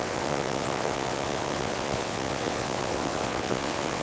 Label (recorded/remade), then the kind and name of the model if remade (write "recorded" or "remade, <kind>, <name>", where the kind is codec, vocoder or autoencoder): remade, vocoder, WaveNeXt